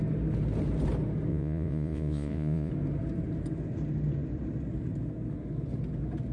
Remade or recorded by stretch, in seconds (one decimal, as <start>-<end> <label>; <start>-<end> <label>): 0.0-1.3 recorded; 1.3-2.7 remade; 2.7-6.3 recorded